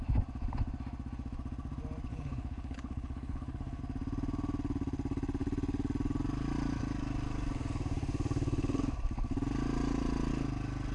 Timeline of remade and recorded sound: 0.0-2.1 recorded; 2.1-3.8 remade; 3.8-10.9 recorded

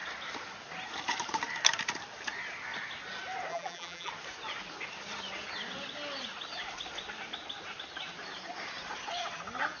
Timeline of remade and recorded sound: 0.0-3.5 recorded; 3.5-4.1 remade; 4.1-9.8 recorded

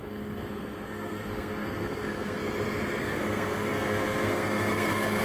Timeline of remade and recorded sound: 0.0-2.4 remade; 2.4-3.0 recorded; 3.0-5.2 remade

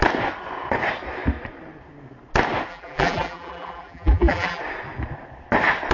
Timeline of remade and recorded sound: 0.0-2.7 recorded; 2.7-4.6 remade; 4.6-5.9 recorded

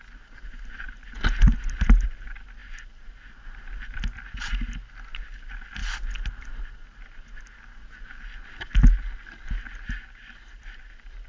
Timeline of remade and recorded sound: 0.0-11.3 recorded